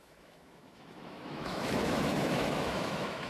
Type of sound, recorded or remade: remade